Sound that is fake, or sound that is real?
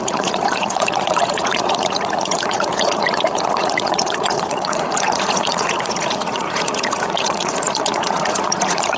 fake